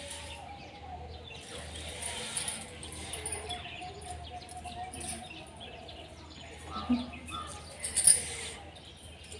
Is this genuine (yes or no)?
yes